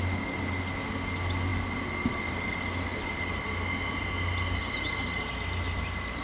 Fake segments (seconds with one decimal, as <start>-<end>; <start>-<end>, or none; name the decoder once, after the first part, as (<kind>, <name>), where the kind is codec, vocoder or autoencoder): none